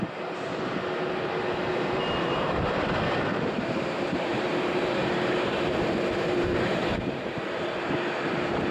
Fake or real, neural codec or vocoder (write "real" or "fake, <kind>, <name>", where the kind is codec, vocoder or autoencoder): fake, vocoder, BigVGAN v2